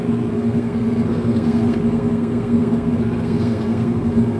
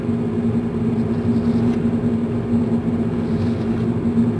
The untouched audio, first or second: second